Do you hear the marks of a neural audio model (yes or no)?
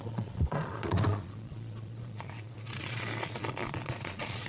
yes